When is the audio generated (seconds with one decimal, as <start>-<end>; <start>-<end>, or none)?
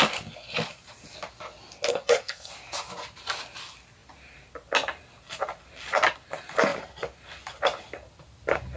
1.9-2.5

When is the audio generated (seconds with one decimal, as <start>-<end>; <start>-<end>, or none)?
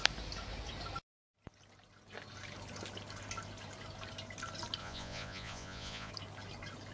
4.8-6.1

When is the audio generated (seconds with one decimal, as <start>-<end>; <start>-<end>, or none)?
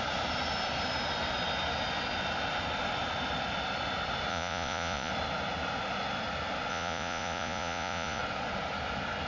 4.3-5.1; 6.7-8.2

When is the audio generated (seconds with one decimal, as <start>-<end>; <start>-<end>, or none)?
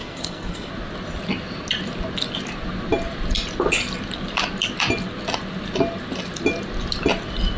0.0-0.7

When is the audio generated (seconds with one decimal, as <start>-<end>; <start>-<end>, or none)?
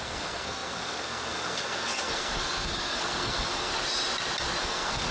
0.0-3.7; 4.6-5.1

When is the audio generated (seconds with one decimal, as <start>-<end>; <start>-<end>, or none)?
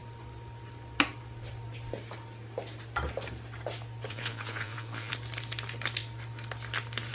4.1-5.1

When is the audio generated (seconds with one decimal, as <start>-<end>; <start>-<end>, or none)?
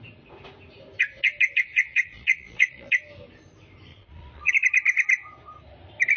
1.7-2.9; 3.9-4.5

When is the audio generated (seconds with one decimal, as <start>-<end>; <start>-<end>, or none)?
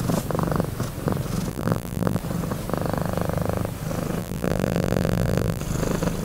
1.5-2.2; 4.2-5.6